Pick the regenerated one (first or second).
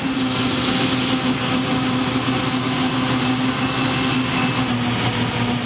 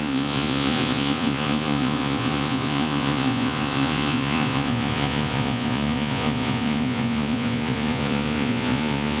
second